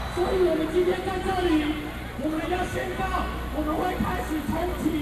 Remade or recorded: recorded